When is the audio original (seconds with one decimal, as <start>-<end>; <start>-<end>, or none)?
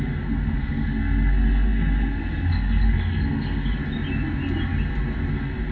3.8-5.3